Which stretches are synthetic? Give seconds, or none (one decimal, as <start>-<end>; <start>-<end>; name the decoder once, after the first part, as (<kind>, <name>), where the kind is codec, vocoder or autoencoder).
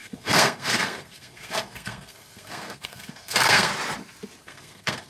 0.0-3.7 (codec, SNAC); 4.4-5.1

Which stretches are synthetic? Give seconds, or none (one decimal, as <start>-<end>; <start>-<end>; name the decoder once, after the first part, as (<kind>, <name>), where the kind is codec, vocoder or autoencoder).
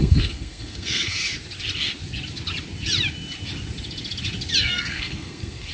0.0-1.2 (codec, SNAC); 4.6-5.7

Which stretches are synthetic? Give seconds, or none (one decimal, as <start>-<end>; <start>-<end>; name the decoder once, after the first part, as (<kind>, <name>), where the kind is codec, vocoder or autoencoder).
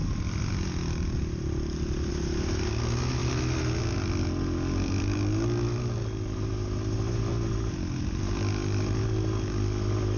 none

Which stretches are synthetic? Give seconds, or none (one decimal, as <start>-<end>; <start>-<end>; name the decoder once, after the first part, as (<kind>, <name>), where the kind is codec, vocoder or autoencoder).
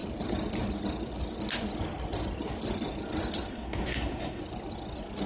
3.5-4.4 (codec, SNAC)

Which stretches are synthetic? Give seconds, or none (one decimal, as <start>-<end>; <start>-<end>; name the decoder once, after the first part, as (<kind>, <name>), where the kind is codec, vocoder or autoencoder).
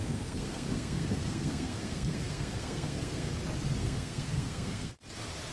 0.0-3.3 (codec, SNAC); 3.8-4.9